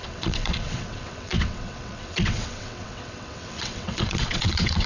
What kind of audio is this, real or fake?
fake